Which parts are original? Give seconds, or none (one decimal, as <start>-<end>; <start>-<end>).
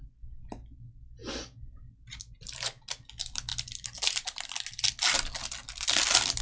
0.0-6.4